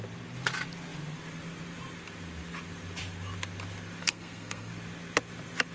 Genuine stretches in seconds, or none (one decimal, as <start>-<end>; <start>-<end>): 0.0-4.0; 4.7-5.7